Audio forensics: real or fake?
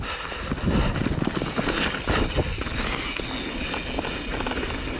real